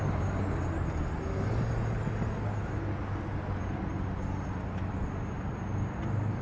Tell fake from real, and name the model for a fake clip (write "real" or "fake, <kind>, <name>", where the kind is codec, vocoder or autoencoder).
real